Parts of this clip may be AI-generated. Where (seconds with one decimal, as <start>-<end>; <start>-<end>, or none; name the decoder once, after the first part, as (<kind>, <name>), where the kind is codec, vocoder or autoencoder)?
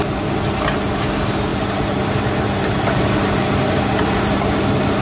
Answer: 1.5-4.5 (vocoder, BigVGAN v2)